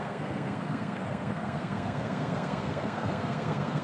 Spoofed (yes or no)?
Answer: yes